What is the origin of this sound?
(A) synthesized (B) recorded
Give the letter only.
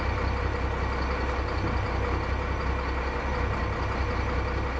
B